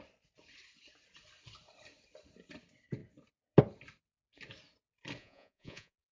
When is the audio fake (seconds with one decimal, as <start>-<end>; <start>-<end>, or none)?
5.2-6.1